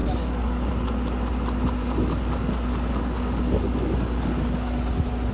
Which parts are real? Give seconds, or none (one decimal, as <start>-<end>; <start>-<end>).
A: 0.7-1.8; 4.8-5.3